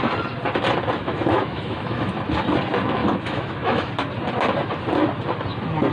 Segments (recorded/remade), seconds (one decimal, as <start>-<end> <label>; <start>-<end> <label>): 0.0-1.0 recorded; 1.0-2.1 remade; 2.1-3.0 recorded; 3.0-3.9 remade; 3.9-5.9 recorded